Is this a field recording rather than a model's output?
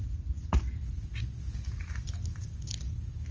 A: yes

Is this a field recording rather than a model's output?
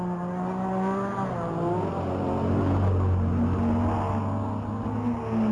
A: yes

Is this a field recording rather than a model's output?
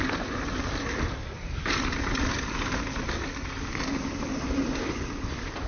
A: yes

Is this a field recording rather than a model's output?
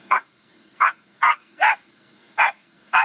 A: no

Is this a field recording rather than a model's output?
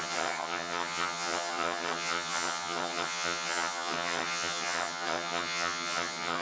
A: no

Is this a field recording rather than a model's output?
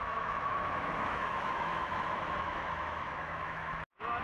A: no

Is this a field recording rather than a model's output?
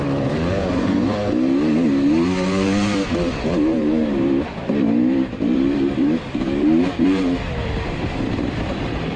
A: no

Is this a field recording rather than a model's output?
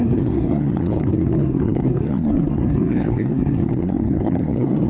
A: no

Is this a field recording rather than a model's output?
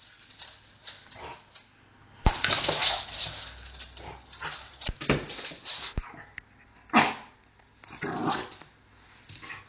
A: yes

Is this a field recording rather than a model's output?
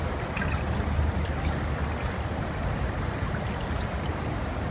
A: yes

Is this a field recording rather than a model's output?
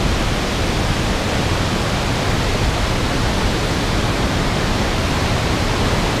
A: yes